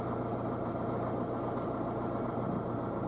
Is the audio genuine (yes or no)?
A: yes